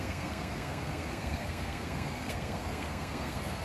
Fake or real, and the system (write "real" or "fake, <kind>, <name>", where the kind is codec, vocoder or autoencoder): fake, codec, SNAC